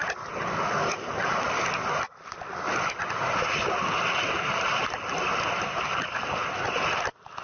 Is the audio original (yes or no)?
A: yes